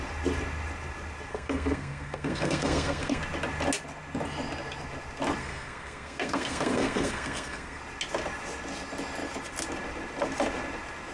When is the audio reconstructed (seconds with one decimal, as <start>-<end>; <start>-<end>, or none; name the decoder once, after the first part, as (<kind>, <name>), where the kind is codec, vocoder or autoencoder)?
1.3-3.2 (codec, SNAC); 5.4-7.8